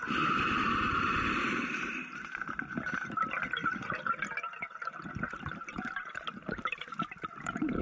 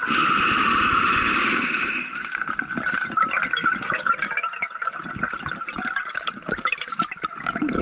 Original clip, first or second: second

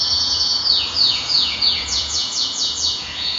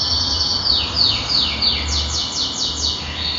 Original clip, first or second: second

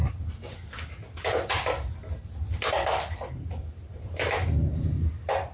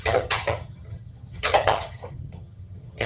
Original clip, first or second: first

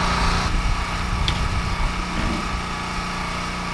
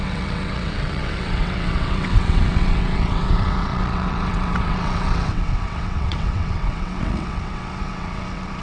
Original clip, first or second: first